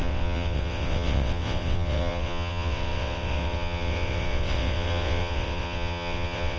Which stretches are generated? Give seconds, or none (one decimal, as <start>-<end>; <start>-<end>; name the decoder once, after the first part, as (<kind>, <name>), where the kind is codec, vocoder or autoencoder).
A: 0.0-6.6 (vocoder, WaveNeXt)